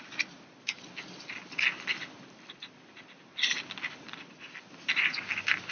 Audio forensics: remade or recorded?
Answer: recorded